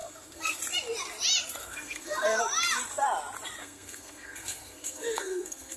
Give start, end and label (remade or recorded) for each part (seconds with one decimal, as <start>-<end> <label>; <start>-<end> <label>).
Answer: 0.0-0.6 remade; 0.6-1.6 recorded; 1.6-2.4 remade; 2.4-3.6 recorded; 3.6-5.8 remade